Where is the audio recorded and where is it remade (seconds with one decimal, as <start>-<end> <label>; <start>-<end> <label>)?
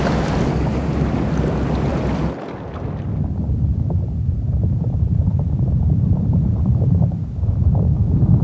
0.0-0.7 recorded; 0.7-1.3 remade; 1.3-5.3 recorded; 5.3-7.6 remade; 7.6-8.4 recorded